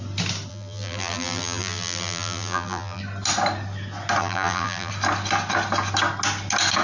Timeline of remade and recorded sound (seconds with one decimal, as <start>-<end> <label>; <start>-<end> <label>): 0.0-0.5 recorded; 0.5-3.0 remade; 3.0-4.2 recorded; 4.2-4.9 remade; 4.9-6.8 recorded